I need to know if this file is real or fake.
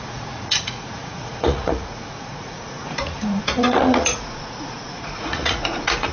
fake